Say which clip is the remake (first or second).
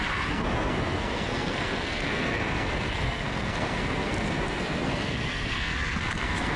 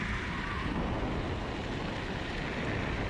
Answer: first